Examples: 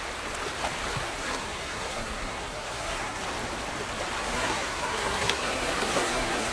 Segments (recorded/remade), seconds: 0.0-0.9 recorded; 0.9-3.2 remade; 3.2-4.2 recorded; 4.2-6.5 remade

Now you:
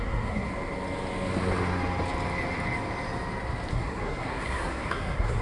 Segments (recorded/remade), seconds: 0.0-0.5 remade; 0.5-3.7 recorded; 3.7-5.4 remade

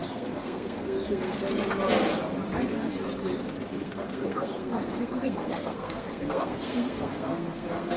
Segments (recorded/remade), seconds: 0.0-1.5 remade; 1.5-3.8 recorded; 3.8-8.0 remade

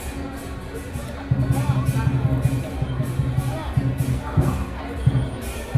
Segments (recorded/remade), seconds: 0.0-4.1 recorded; 4.1-4.8 remade; 4.8-5.8 recorded

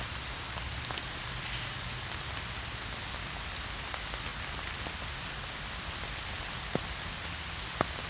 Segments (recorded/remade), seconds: 0.0-8.1 recorded

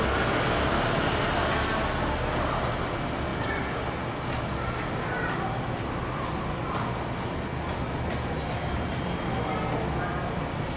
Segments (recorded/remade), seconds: 0.0-10.8 recorded

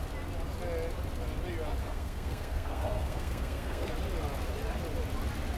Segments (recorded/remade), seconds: 0.0-1.8 recorded; 1.8-3.9 remade; 3.9-5.6 recorded